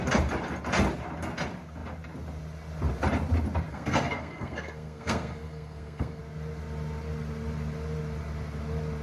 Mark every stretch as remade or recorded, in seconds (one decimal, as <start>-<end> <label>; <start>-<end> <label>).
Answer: 0.0-3.7 recorded; 3.7-6.2 remade; 6.2-9.0 recorded